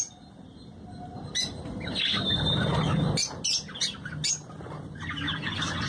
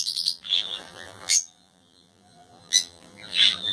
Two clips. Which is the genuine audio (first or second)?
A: first